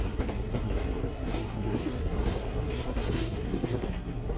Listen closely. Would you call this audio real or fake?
fake